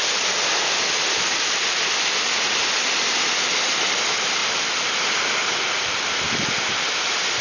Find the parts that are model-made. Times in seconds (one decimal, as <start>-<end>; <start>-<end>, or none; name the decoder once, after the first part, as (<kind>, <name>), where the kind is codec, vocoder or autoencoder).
none